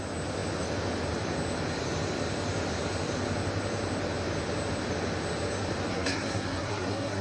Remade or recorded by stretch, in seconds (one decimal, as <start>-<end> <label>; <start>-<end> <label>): 0.0-5.9 recorded; 5.9-7.2 remade